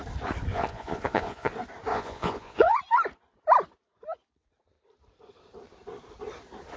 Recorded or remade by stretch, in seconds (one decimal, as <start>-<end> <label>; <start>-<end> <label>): 0.0-0.5 recorded; 0.5-1.5 remade; 1.5-1.9 recorded; 1.9-2.8 remade; 2.8-6.8 recorded